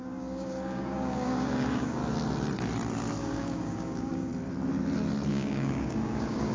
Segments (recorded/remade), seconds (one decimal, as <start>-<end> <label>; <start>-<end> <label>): 0.0-2.0 remade; 2.0-3.2 recorded; 3.2-4.3 remade; 4.3-5.3 recorded; 5.3-6.5 remade